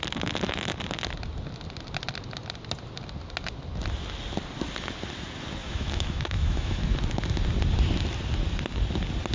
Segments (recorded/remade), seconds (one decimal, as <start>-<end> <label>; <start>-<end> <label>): 0.0-5.6 recorded; 5.6-6.8 remade; 6.8-9.3 recorded